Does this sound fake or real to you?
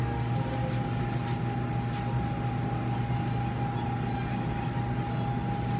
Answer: real